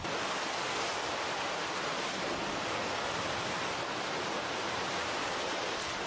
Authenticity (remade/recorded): recorded